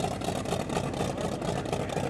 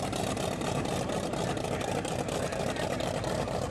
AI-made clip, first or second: second